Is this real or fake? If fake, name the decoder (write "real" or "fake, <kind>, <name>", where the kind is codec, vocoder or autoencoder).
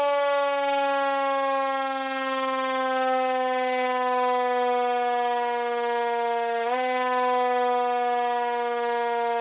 real